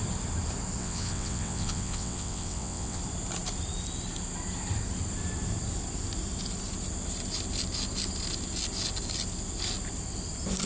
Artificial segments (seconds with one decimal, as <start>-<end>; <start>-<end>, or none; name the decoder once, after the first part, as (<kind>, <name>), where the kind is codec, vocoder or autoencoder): 0.8-3.0 (vocoder, WaveNeXt)